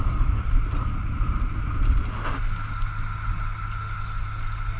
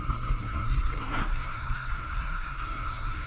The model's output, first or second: second